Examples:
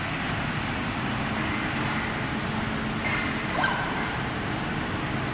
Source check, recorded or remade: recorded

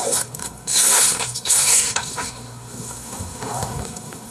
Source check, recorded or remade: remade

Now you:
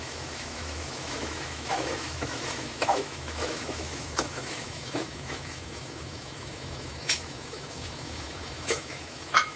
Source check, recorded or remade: remade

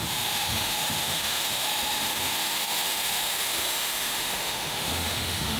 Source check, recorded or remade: remade